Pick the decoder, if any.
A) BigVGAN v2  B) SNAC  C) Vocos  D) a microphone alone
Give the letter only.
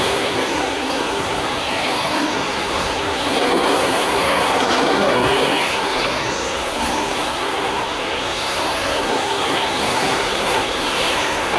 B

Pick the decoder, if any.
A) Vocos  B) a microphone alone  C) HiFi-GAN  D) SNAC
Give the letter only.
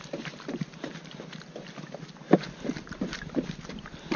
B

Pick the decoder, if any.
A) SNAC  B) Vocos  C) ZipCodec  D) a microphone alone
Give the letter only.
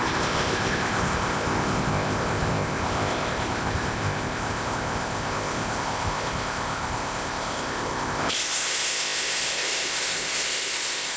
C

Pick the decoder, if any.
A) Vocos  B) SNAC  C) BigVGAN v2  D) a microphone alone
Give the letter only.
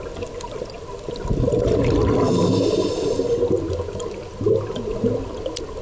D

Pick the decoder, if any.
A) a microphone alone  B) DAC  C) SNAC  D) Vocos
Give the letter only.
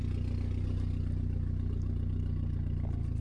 A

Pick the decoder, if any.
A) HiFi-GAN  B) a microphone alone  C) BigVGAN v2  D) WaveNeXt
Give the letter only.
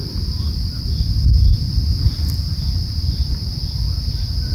C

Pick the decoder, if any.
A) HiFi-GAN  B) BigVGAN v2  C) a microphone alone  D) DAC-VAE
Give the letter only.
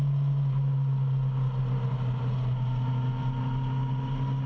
C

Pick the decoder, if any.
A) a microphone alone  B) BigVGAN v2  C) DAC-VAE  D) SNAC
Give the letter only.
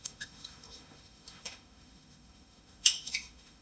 C